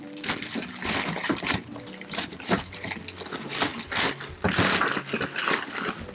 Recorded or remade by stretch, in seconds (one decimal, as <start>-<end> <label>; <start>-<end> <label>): 0.0-1.2 recorded; 1.2-3.0 remade; 3.0-6.1 recorded